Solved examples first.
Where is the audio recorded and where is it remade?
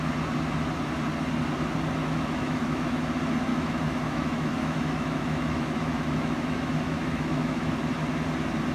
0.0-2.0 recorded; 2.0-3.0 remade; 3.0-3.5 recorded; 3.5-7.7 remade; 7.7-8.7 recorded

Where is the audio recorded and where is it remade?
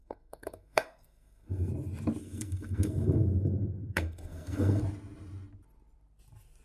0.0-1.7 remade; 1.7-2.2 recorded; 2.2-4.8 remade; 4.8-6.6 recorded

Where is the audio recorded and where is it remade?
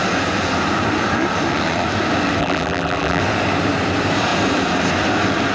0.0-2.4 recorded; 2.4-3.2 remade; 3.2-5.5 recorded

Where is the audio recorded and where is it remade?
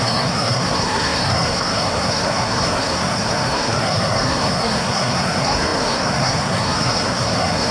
0.0-7.7 remade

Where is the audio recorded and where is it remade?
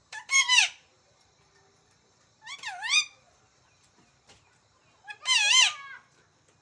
0.0-4.0 remade; 4.0-6.6 recorded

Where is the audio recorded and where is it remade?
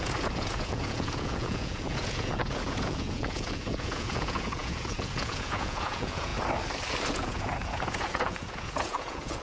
0.0-6.3 remade; 6.3-7.1 recorded; 7.1-9.4 remade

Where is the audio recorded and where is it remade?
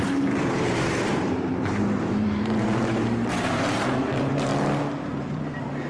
0.0-4.5 remade; 4.5-5.0 recorded; 5.0-5.9 remade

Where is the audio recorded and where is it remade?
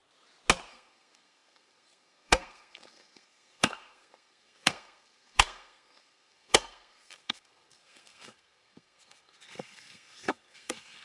0.0-0.7 recorded; 0.7-11.0 remade